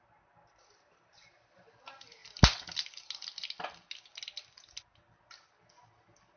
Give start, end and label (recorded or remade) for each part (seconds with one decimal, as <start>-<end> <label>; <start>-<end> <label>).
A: 0.0-6.4 recorded